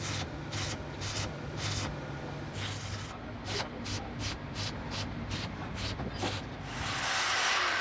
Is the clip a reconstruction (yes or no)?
no